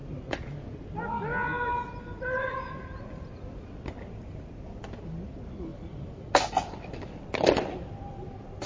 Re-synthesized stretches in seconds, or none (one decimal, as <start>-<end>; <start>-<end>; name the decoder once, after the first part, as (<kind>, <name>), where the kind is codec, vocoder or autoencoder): none